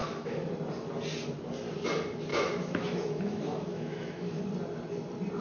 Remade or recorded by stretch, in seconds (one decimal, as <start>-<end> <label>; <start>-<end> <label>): 0.0-0.5 remade; 0.5-2.3 recorded; 2.3-4.4 remade; 4.4-5.4 recorded